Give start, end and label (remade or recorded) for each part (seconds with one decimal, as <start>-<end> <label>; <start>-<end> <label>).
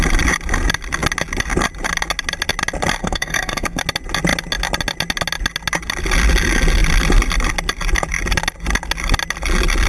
0.0-3.0 recorded; 3.0-3.8 remade; 3.8-9.9 recorded